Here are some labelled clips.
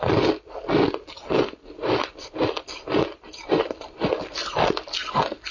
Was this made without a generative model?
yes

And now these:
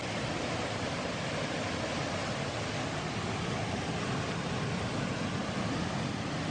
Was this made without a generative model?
yes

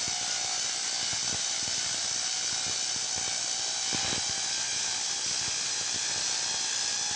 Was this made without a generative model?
yes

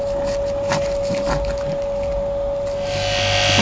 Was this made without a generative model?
yes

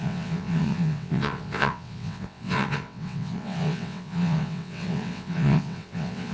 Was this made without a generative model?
no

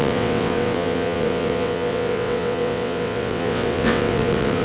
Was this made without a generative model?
no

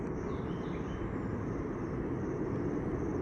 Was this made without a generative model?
yes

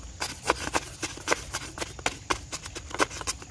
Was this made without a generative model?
yes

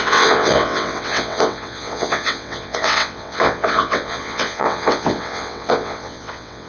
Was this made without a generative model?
no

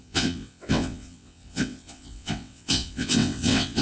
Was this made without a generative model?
no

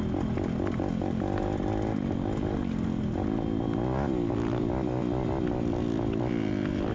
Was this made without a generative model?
yes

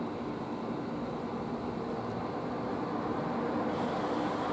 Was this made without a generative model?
yes